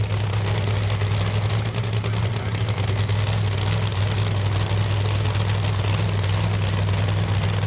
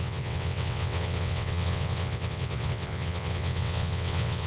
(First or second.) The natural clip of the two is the first